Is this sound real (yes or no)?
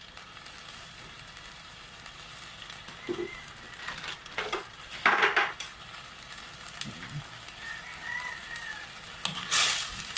yes